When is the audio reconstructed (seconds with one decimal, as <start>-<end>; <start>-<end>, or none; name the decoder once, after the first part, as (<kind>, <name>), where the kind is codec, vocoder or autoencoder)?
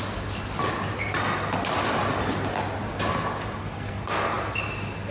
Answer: 3.6-4.6 (codec, SNAC)